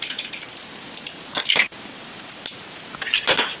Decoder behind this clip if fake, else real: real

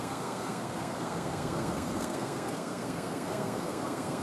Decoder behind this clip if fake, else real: fake, codec, SNAC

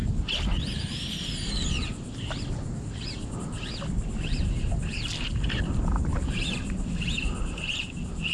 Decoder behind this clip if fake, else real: real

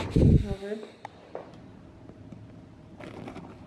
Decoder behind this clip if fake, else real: real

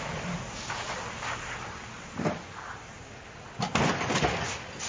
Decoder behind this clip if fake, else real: real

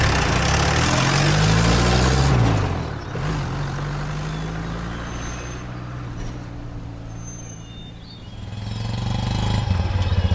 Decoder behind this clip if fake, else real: real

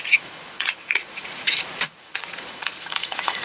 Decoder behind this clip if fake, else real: fake, vocoder, Vocos